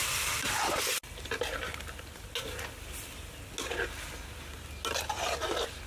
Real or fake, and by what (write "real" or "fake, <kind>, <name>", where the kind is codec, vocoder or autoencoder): real